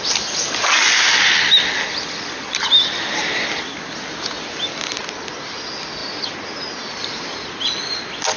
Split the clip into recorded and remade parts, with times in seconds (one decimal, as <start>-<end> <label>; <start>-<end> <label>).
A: 0.0-8.4 recorded